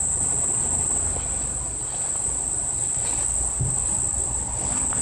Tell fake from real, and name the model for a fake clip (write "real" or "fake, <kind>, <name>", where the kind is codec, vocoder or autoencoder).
real